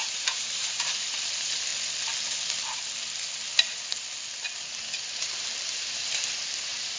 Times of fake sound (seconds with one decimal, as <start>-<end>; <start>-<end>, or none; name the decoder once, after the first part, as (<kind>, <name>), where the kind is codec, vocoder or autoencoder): 0.0-1.7 (vocoder, BigVGAN v2); 5.9-7.0